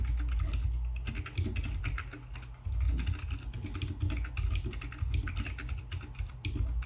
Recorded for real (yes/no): yes